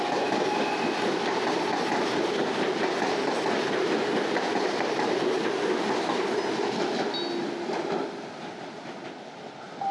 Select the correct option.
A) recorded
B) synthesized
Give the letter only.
A